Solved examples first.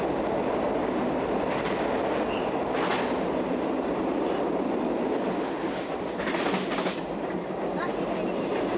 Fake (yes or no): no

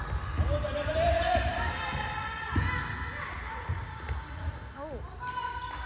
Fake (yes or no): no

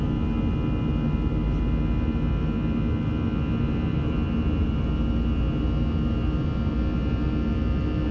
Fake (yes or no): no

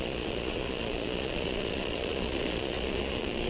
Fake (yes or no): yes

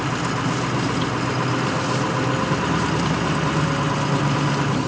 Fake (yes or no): no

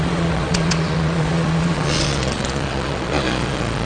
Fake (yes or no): yes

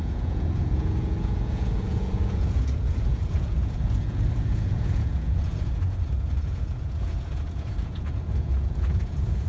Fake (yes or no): yes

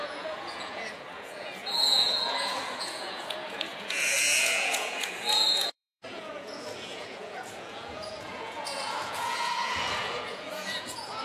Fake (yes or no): yes